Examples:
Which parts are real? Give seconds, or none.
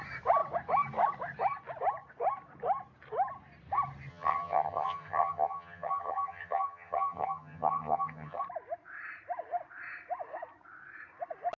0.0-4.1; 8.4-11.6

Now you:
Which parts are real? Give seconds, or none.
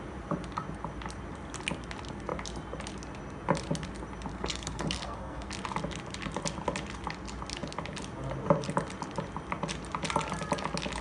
0.0-4.3; 5.5-11.0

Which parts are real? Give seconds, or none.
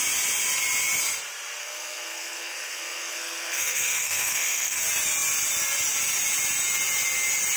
0.0-1.6; 4.8-7.6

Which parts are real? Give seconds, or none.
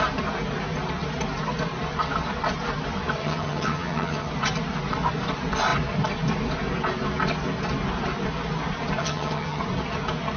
0.0-3.2; 4.3-9.0; 9.6-10.4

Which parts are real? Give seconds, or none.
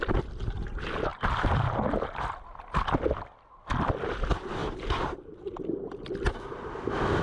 0.0-7.2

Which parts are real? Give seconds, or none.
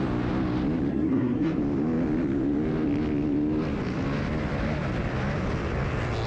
0.0-0.9; 1.6-6.3